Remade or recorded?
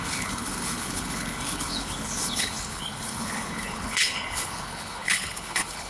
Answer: remade